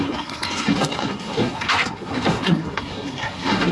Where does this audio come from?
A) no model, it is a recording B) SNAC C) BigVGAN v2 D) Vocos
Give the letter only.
B